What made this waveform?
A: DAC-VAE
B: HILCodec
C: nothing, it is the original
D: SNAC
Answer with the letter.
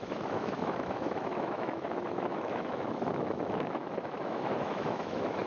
A